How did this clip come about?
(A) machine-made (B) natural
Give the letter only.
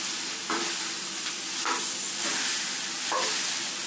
B